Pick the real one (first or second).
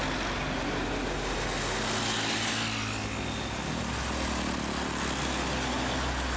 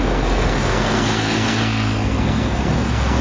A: first